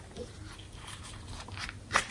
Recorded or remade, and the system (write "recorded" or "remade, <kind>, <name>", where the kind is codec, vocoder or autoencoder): recorded